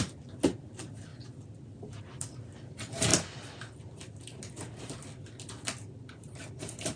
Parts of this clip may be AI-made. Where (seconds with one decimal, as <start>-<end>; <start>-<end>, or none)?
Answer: 0.0-1.1; 2.0-3.1; 6.6-7.0